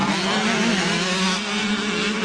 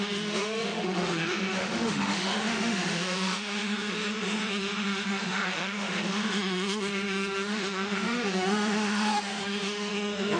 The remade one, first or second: second